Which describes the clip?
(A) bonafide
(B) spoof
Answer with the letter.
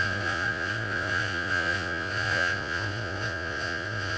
B